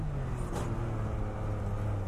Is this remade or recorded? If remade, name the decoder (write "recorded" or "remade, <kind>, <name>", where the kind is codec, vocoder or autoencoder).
recorded